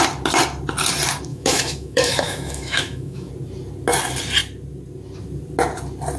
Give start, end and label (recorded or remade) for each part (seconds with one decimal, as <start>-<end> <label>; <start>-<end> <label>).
0.0-1.3 recorded; 1.3-3.3 remade; 3.3-6.2 recorded